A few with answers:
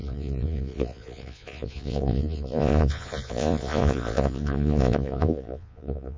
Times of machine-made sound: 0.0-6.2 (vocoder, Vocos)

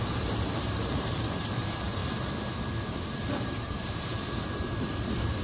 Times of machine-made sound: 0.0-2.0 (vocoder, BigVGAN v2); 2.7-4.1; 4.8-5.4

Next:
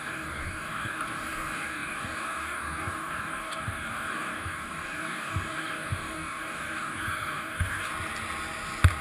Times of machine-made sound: 0.0-7.9 (codec, DAC)

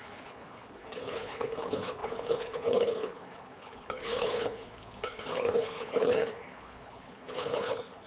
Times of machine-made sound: 0.0-8.1 (codec, HILCodec)